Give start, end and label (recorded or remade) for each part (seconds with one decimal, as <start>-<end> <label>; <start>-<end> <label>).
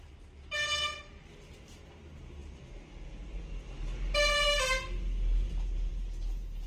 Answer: 0.0-6.7 recorded